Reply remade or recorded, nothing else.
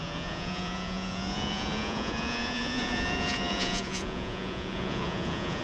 remade